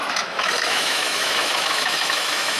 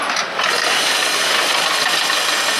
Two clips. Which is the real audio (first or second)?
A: second